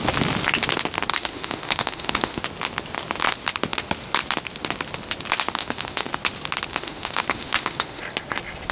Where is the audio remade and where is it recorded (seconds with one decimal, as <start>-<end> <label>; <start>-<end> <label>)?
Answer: 0.0-1.1 recorded; 1.1-2.4 remade; 2.4-5.6 recorded; 5.6-6.1 remade; 6.1-6.7 recorded; 6.7-8.0 remade; 8.0-8.7 recorded